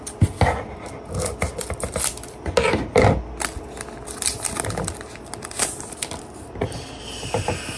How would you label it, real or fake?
real